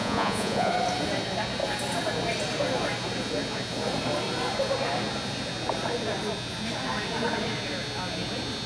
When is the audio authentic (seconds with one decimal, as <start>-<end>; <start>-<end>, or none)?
0.7-8.7